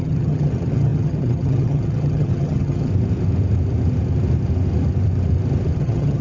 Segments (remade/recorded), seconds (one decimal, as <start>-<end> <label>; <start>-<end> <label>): 0.0-2.9 remade; 2.9-5.8 recorded; 5.8-6.2 remade